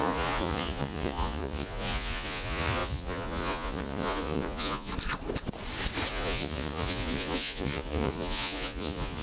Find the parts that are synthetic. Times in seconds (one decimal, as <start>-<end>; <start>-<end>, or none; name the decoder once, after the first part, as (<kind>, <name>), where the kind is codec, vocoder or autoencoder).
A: 0.0-4.9 (vocoder, Vocos); 6.1-9.2